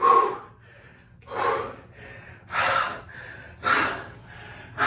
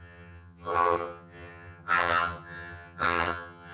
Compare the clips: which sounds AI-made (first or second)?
second